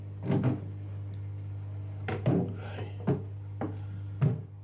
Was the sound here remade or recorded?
recorded